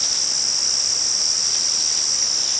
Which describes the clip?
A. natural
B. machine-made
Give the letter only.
A